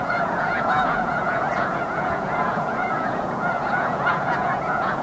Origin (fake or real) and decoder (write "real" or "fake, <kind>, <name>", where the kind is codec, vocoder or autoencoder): fake, vocoder, Vocos